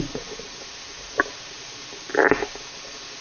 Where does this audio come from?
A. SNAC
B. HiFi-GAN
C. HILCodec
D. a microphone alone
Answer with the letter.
D